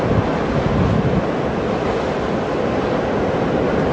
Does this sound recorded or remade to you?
recorded